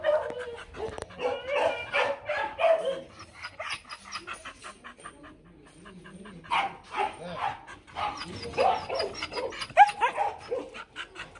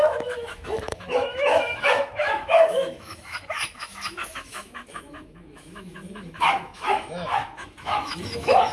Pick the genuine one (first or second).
first